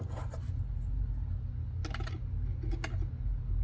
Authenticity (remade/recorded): recorded